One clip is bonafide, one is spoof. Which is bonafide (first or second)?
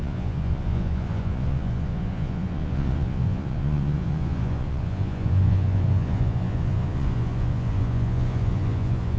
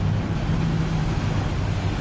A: second